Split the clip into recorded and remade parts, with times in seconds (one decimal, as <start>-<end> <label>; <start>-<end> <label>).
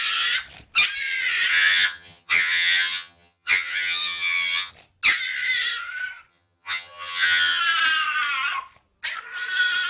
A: 0.0-1.5 recorded; 1.5-4.7 remade; 4.7-6.3 recorded; 6.3-7.6 remade; 7.6-9.9 recorded